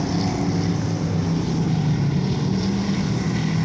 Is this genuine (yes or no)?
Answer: yes